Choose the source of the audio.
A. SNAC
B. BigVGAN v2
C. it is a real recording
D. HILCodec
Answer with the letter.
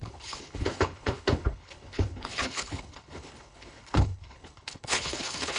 D